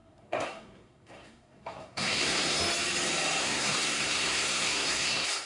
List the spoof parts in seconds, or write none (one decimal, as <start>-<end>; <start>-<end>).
0.0-2.6; 3.4-5.5